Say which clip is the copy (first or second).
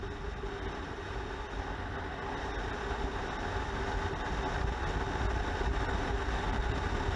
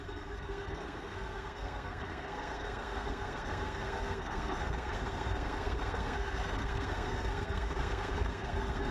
second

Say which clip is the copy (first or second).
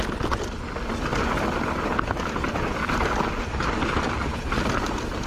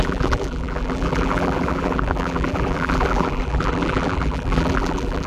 second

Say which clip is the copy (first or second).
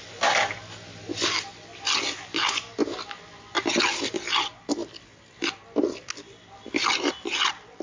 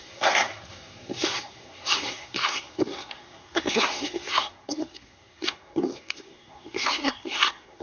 second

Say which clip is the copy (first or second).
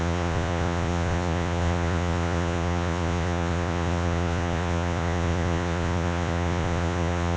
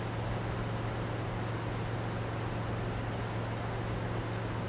first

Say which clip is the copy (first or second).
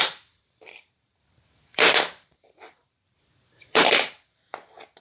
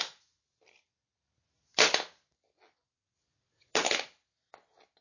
first